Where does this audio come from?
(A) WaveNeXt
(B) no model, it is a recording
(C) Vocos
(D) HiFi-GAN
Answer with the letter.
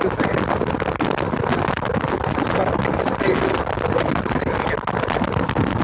B